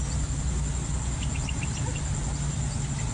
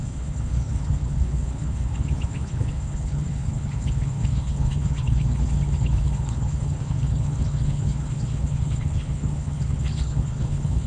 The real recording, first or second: first